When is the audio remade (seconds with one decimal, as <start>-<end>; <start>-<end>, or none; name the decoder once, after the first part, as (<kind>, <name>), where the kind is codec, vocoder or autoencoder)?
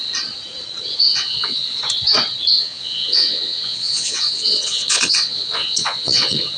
1.1-1.8 (vocoder, Vocos); 2.5-6.6